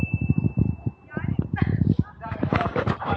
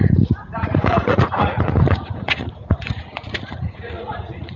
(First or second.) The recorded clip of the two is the first